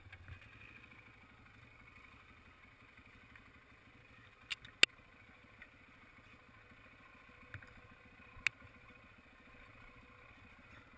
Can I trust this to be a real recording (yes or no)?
yes